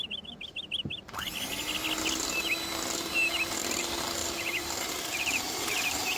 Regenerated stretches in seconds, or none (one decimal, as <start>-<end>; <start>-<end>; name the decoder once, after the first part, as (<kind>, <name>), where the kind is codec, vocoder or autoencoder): 4.2-6.2 (vocoder, BigVGAN v2)